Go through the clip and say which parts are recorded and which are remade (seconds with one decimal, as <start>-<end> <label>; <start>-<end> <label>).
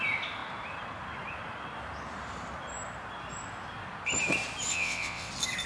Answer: 0.0-4.7 recorded; 4.7-5.3 remade; 5.3-5.7 recorded